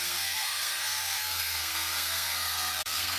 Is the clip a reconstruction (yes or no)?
yes